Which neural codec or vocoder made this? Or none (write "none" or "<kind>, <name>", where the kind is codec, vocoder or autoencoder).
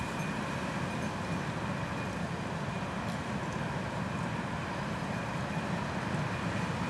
none